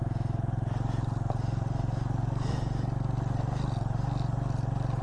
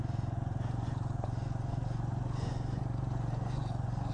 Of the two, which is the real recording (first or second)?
first